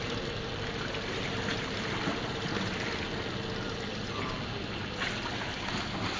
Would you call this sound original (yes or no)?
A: yes